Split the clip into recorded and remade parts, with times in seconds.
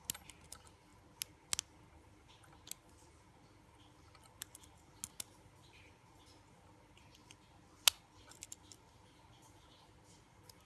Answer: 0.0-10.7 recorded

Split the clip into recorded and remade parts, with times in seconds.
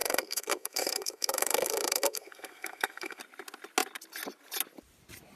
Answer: 0.0-3.2 remade; 3.2-5.4 recorded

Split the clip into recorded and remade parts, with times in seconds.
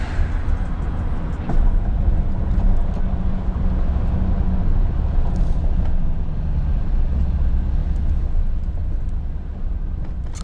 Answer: 0.0-10.4 recorded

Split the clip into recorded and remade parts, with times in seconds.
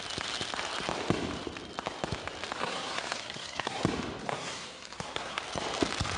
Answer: 0.0-2.6 recorded; 2.6-3.8 remade; 3.8-4.2 recorded; 4.2-5.4 remade; 5.4-6.2 recorded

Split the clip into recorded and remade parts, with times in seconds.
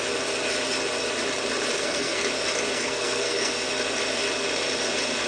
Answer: 0.0-1.7 recorded; 1.7-2.2 remade; 2.2-2.7 recorded; 2.7-3.7 remade; 3.7-5.3 recorded